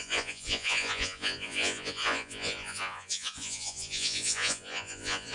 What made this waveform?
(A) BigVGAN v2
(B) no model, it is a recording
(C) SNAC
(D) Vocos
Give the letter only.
D